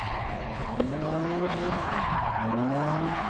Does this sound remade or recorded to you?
remade